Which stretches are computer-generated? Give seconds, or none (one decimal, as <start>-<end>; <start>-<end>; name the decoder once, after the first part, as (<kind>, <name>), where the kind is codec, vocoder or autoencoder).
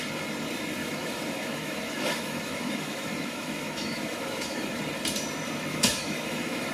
0.8-4.8 (autoencoder, DAC-VAE); 5.7-6.7